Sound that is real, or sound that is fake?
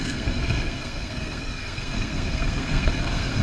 fake